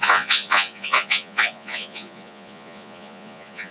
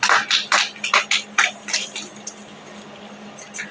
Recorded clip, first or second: second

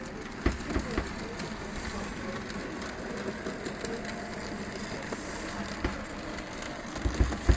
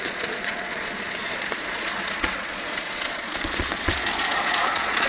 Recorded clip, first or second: first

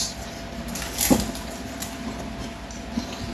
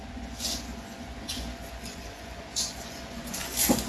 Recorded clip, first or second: first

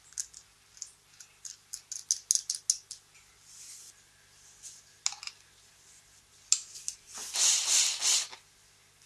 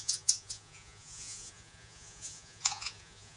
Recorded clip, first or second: first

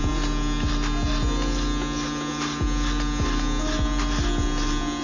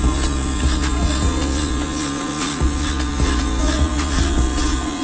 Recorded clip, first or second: first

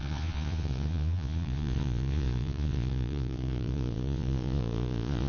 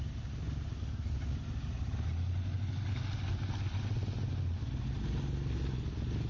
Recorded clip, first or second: second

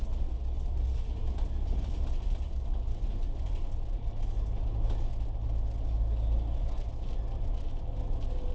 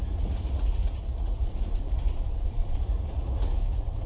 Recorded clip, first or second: first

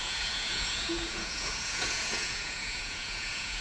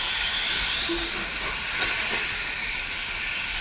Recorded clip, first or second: second